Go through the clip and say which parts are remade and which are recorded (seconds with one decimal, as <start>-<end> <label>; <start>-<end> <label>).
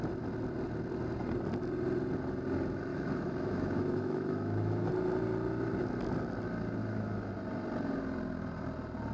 0.0-2.9 recorded; 2.9-4.9 remade; 4.9-6.8 recorded; 6.8-7.3 remade; 7.3-9.1 recorded